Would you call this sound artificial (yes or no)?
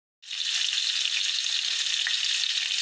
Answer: no